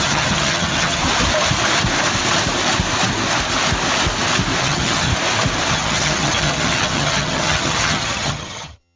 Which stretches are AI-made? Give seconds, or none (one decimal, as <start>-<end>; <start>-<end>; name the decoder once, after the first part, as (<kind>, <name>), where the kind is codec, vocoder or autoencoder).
0.0-1.0 (vocoder, HiFi-GAN); 4.6-5.1; 5.7-9.0